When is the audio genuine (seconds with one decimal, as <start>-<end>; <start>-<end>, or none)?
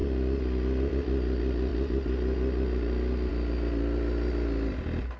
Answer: 0.0-5.2